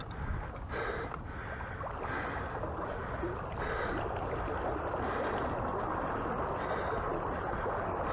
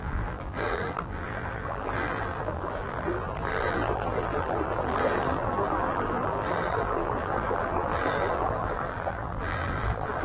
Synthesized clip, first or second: second